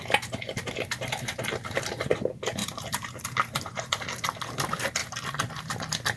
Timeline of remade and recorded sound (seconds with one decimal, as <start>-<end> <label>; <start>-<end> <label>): 0.0-2.6 recorded; 2.6-4.0 remade; 4.0-6.2 recorded